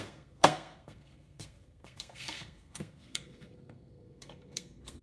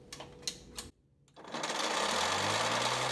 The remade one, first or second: first